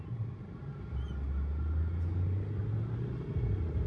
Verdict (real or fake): real